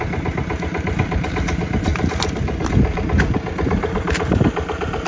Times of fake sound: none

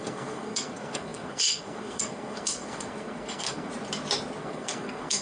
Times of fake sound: 0.0-3.7 (codec, SNAC); 4.4-5.2

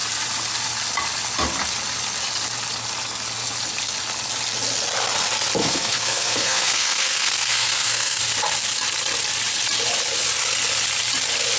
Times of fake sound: 5.6-8.2 (codec, SNAC)